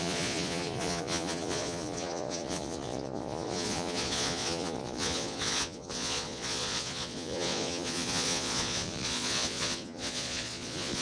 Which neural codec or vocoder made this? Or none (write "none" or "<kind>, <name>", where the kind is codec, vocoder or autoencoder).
vocoder, Vocos